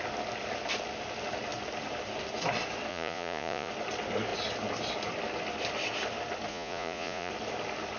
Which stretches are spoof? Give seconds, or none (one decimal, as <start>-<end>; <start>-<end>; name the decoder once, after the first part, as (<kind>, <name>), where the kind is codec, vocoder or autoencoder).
2.9-3.7 (vocoder, Vocos); 6.5-7.3